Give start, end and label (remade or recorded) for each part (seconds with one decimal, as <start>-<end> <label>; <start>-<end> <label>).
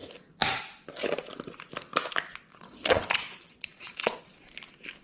0.0-2.5 recorded; 2.5-4.2 remade; 4.2-5.0 recorded